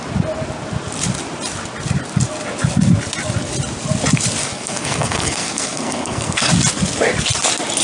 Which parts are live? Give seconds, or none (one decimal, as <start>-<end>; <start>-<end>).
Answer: 0.0-4.4; 6.5-7.8